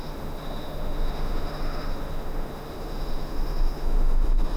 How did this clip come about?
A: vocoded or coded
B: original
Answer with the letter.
A